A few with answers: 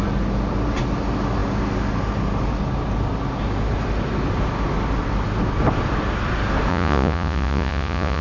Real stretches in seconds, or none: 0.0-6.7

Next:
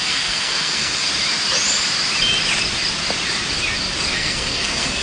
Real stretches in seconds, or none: 1.1-4.1

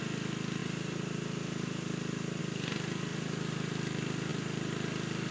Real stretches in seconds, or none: 0.0-3.1; 3.7-5.3

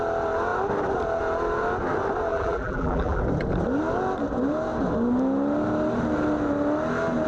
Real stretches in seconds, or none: 0.0-2.3; 3.2-7.3

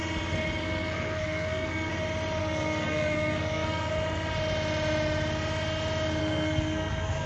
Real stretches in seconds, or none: 0.0-0.6; 1.9-2.4; 3.9-6.2

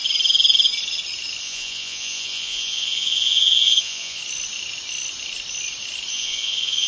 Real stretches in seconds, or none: 0.0-1.4; 4.2-6.1